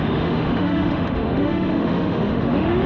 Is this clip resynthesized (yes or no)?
yes